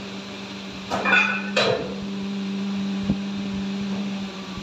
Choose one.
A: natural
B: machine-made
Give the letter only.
B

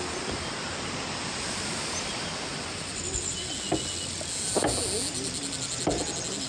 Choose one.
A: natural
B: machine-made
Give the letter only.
A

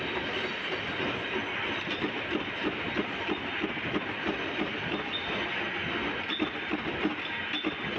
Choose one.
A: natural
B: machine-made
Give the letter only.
A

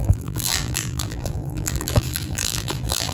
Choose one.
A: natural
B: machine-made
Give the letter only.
B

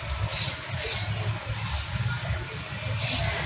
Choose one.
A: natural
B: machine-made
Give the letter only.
A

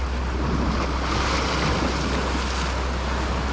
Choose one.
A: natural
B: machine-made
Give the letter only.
A